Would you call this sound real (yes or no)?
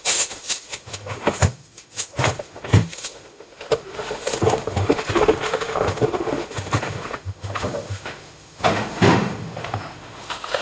no